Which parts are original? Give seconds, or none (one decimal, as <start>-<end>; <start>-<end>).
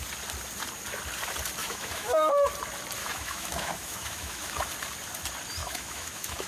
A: 0.0-1.6; 2.3-3.0; 4.7-5.6